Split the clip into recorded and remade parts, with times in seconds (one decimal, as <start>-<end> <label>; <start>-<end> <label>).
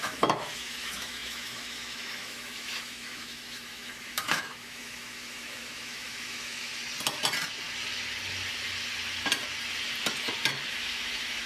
0.0-6.7 remade; 6.7-10.7 recorded; 10.7-11.5 remade